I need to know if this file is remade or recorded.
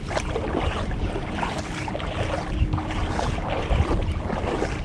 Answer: recorded